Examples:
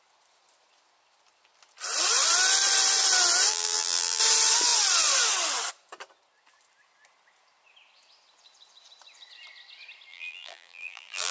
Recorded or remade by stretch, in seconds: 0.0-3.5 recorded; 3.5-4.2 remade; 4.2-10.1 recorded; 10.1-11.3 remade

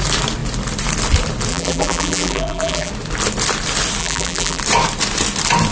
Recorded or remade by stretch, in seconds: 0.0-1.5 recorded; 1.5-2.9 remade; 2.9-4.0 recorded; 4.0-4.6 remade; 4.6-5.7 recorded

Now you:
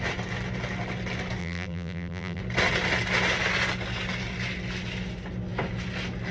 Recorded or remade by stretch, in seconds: 0.0-1.4 recorded; 1.4-2.4 remade; 2.4-6.3 recorded

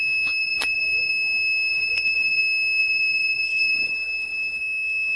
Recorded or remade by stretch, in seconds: 0.0-0.4 recorded; 0.4-1.1 remade; 1.1-1.7 recorded; 1.7-2.4 remade; 2.4-2.8 recorded; 2.8-4.6 remade; 4.6-5.2 recorded